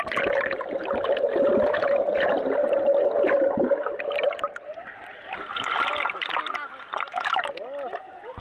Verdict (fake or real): real